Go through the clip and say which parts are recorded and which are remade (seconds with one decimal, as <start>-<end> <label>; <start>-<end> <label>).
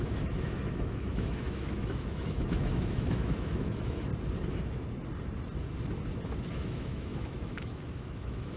0.0-4.1 remade; 4.1-6.5 recorded; 6.5-8.6 remade